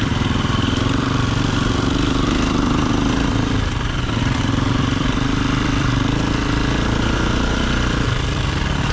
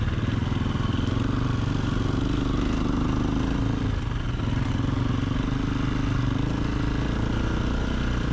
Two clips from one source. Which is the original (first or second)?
second